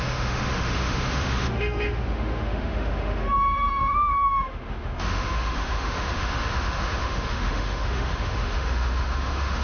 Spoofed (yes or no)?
yes